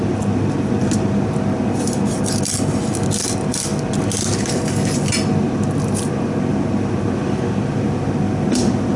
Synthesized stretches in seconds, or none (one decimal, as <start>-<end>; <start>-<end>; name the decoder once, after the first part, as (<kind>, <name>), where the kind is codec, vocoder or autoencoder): none